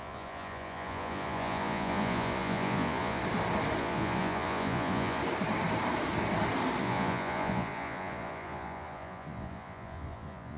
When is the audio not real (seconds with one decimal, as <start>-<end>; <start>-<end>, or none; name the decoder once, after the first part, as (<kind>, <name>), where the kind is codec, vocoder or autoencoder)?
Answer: 0.0-3.2 (vocoder, Vocos); 3.8-5.2; 6.8-10.6